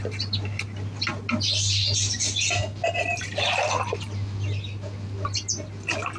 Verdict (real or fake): real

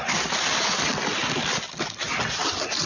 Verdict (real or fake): real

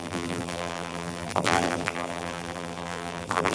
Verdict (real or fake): fake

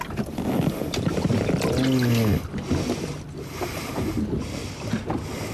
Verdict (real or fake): real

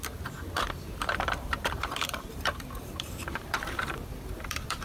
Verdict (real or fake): fake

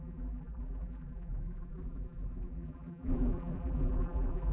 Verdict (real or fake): fake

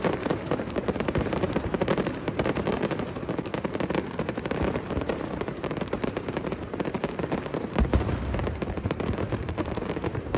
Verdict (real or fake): fake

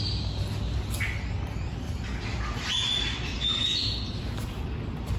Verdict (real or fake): real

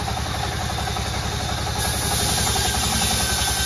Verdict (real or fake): real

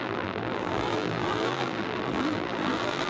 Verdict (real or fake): fake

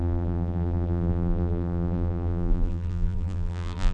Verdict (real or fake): fake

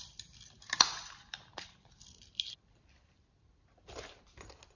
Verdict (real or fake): fake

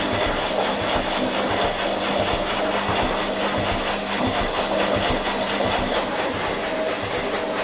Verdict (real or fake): real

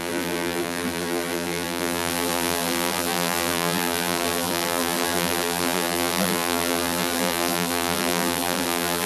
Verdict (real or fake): fake